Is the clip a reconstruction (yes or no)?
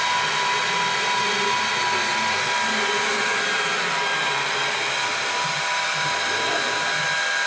no